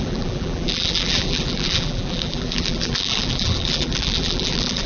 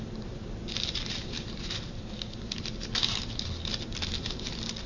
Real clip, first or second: second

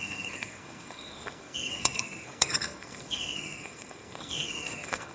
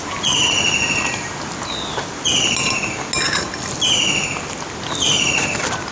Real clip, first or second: second